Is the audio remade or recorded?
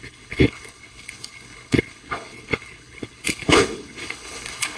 remade